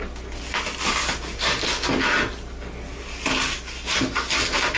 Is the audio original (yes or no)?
yes